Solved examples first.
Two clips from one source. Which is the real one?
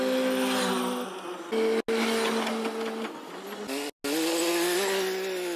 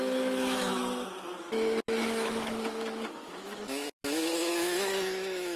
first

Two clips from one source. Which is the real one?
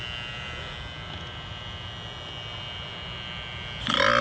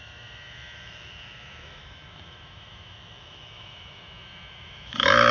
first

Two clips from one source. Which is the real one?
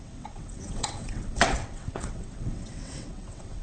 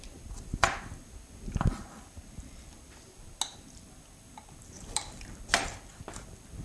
second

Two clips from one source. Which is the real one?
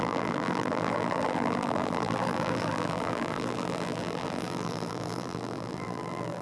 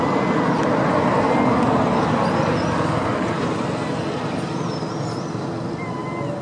second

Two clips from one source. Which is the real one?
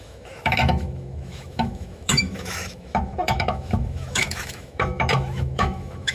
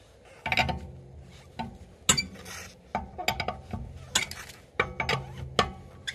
second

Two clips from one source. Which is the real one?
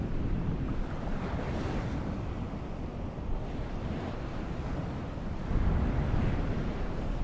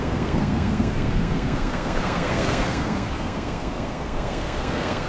first